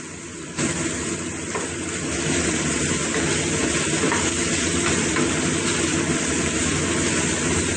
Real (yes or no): yes